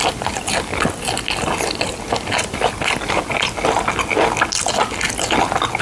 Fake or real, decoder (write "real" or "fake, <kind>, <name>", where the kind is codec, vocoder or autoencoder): real